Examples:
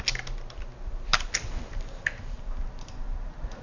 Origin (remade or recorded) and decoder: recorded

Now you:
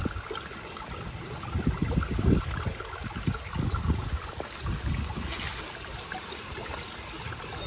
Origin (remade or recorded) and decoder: recorded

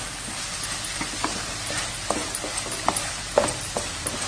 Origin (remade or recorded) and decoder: recorded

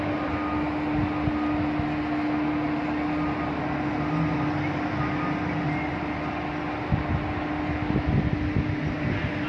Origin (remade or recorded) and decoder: recorded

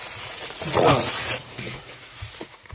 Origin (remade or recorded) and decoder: remade, vocoder, Vocos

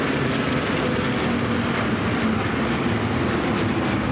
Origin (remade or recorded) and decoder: recorded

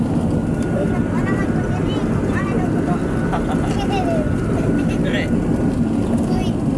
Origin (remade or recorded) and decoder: recorded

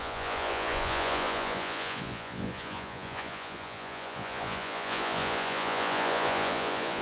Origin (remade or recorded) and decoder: remade, vocoder, Vocos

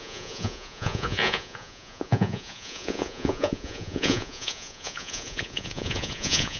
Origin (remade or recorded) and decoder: remade, vocoder, Vocos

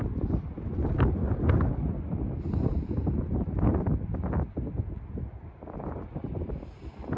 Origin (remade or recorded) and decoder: recorded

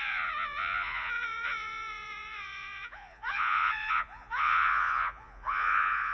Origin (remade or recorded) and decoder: remade, vocoder, Vocos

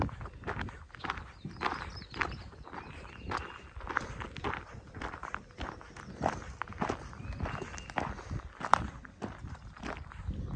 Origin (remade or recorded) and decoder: recorded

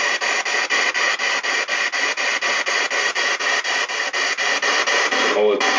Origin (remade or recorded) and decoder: recorded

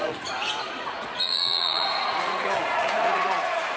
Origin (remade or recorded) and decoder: remade, vocoder, Vocos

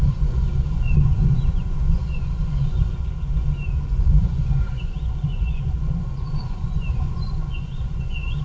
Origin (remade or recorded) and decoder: remade, vocoder, Vocos